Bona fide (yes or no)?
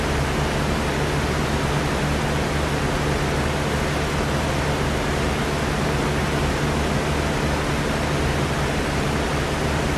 yes